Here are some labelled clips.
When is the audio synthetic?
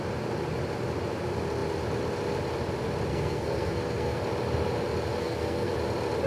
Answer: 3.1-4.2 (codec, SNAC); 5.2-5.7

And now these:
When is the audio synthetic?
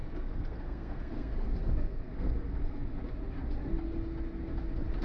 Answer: 0.0-2.9 (codec, SNAC)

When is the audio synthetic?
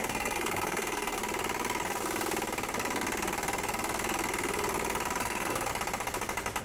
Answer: 0.0-1.2 (codec, SNAC); 5.2-5.7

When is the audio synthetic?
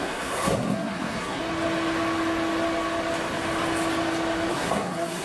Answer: 0.0-1.4 (codec, SNAC); 4.5-5.2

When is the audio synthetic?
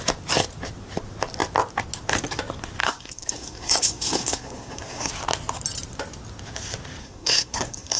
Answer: 2.8-5.1 (codec, SNAC); 7.0-8.0